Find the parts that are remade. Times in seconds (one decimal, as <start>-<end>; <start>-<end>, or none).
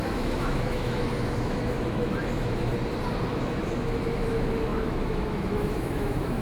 0.0-2.7; 3.3-6.4